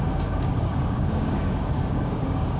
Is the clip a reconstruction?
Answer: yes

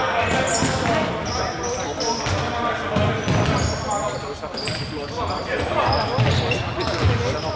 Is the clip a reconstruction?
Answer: no